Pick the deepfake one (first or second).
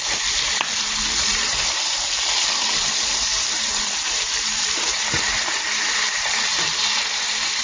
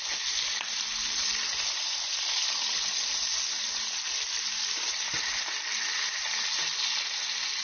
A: first